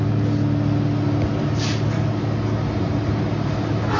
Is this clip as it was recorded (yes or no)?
yes